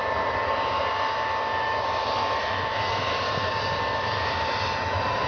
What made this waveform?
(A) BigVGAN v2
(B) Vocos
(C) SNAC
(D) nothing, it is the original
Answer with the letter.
A